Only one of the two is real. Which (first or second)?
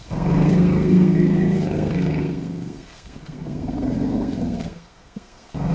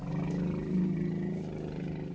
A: second